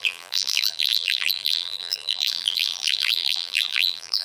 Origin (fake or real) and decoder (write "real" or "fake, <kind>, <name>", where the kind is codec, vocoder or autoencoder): fake, vocoder, BigVGAN v2